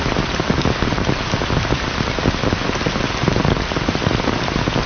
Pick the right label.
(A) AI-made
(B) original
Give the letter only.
B